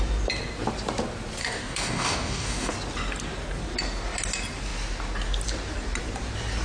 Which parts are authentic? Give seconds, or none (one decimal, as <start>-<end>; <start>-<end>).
0.0-1.4; 2.7-6.6